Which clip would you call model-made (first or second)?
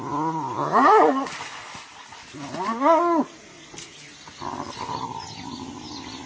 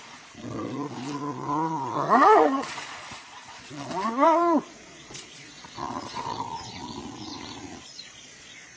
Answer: second